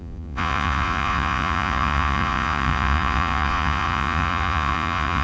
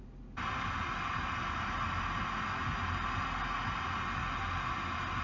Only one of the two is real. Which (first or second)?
second